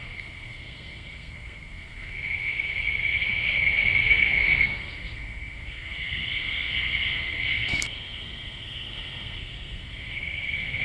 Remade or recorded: remade